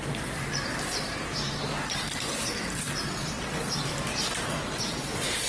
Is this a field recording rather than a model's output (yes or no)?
no